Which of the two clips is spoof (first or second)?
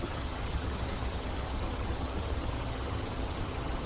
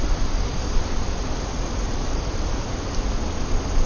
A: first